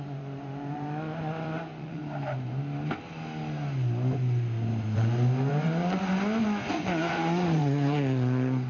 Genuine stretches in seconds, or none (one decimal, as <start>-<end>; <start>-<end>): 2.0-5.5; 6.1-6.7; 7.6-8.7